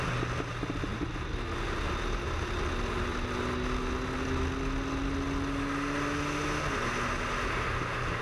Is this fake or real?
real